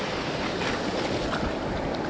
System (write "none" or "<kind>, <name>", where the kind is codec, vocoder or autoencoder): none